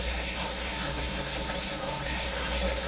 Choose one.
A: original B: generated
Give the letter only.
B